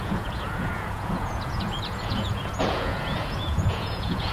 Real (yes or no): no